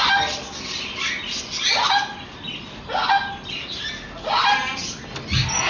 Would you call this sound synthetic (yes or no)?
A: no